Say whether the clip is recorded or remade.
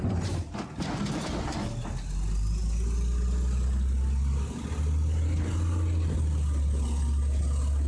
recorded